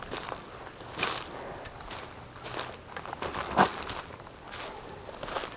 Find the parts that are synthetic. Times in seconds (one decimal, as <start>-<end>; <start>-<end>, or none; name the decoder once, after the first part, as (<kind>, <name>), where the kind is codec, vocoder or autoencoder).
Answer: none